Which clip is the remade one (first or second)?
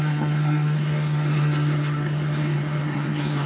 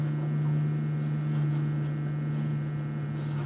first